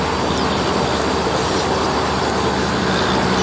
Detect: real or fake real